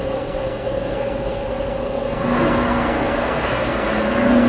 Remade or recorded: remade